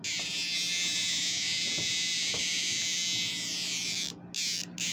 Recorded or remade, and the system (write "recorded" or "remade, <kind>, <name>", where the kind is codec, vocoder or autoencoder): recorded